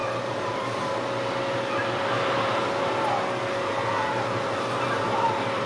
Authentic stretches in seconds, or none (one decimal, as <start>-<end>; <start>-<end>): 0.8-1.8; 2.9-5.7